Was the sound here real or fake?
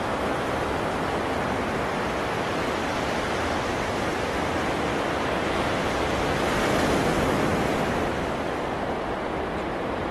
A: real